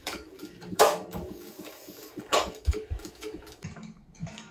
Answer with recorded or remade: remade